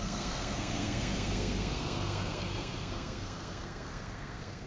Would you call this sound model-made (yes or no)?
yes